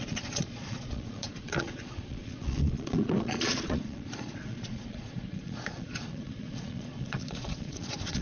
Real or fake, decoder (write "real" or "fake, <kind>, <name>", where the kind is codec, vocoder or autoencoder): fake, vocoder, Vocos